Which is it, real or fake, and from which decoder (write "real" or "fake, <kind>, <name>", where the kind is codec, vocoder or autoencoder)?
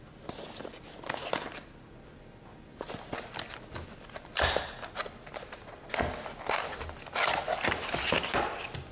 real